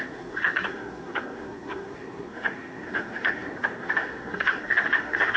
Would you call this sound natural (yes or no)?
no